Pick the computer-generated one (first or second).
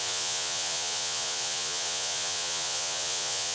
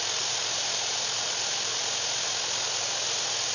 first